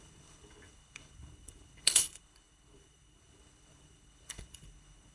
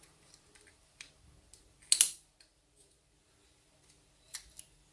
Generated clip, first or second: first